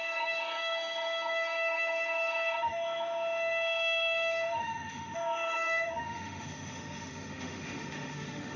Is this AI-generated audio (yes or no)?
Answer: yes